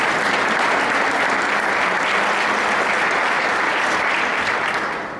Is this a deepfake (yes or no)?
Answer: no